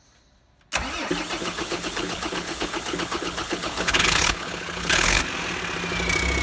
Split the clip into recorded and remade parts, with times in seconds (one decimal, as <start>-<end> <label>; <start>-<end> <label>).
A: 0.0-1.4 recorded; 1.4-5.2 remade; 5.2-6.4 recorded